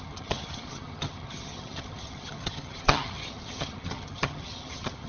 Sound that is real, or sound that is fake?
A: fake